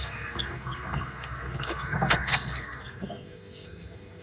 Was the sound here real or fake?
fake